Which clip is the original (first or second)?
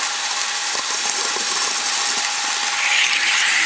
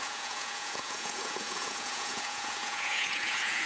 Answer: first